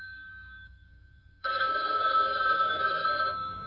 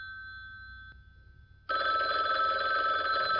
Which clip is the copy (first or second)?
first